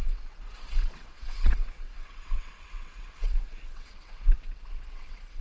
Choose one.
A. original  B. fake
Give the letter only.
B